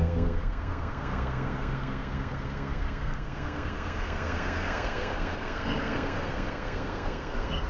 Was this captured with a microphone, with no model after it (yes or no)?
no